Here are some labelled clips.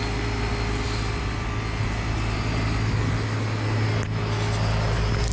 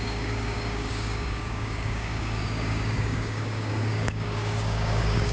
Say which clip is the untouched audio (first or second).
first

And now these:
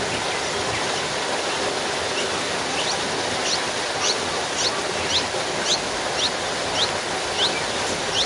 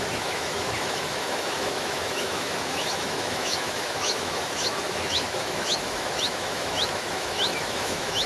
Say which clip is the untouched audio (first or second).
first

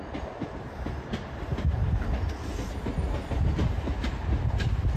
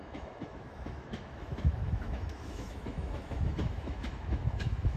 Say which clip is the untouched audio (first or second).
first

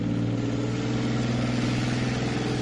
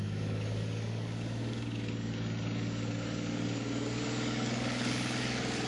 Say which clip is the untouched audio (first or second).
first